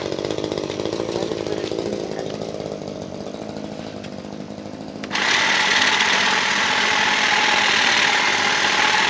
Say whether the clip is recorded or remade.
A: recorded